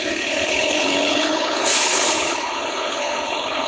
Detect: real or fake fake